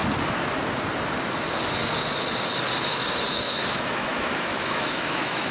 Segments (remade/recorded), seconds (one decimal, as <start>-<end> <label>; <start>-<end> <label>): 0.0-3.3 recorded; 3.3-5.5 remade